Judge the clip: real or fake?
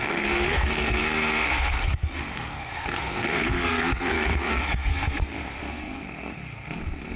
fake